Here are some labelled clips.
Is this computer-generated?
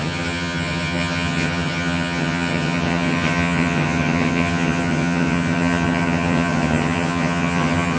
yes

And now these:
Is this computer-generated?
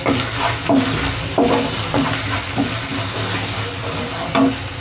no